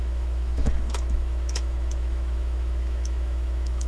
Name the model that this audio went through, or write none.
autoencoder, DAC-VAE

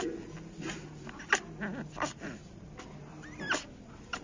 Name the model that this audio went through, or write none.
none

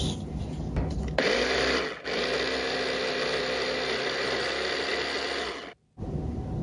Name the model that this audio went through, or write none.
none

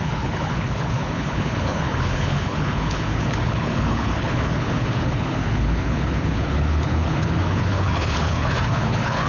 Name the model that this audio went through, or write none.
codec, HILCodec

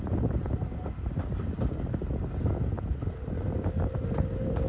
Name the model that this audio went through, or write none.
none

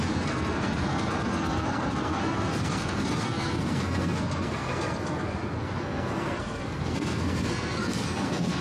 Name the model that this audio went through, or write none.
codec, SNAC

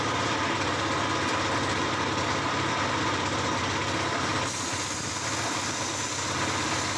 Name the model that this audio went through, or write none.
none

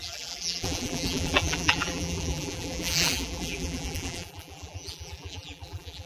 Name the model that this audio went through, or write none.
vocoder, BigVGAN v2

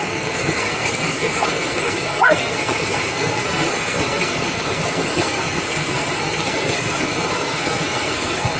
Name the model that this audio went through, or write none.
codec, SNAC